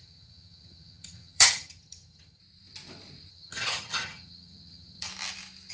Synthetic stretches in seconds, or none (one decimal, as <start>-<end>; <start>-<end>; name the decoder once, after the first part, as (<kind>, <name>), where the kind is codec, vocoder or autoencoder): 0.0-2.4 (vocoder, HiFi-GAN); 3.3-5.1